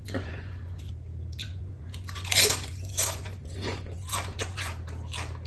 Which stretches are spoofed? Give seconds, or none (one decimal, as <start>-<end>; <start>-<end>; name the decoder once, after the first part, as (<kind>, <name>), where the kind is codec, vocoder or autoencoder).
0.0-0.9 (vocoder, Vocos); 1.4-4.7

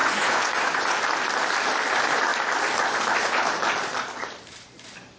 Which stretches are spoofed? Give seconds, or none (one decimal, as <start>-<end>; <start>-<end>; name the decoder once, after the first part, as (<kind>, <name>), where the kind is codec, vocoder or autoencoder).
0.0-1.0 (vocoder, Vocos)

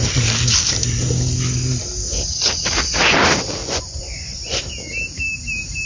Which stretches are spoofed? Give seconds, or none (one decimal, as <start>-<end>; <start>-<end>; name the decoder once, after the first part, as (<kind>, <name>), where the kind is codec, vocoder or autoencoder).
3.6-4.6 (vocoder, Vocos)

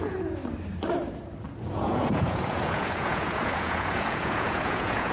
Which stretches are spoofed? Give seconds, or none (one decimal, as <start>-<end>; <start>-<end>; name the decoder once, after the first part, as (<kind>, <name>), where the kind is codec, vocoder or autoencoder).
0.0-0.4 (vocoder, Vocos); 1.6-5.1

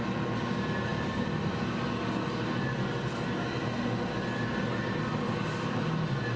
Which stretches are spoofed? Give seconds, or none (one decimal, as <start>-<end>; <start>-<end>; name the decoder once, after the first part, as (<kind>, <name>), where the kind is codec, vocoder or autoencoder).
none

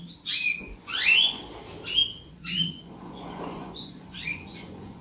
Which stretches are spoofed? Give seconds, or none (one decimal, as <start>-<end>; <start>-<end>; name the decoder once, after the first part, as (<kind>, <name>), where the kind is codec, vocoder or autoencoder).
0.5-1.4 (vocoder, Vocos); 2.0-5.0

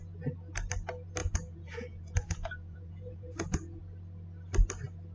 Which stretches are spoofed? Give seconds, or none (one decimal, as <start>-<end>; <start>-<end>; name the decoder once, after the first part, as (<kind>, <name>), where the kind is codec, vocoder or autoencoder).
1.2-3.8 (vocoder, Vocos)